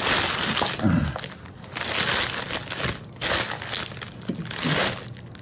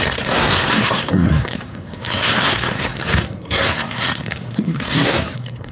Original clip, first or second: first